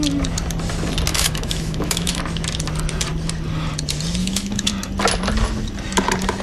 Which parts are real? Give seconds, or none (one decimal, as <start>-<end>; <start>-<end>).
0.0-1.1; 2.2-4.2; 4.7-6.4